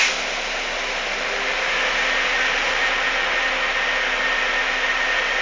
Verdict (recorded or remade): recorded